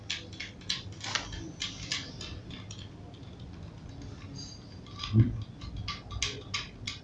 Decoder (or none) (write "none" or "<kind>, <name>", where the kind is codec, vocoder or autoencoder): none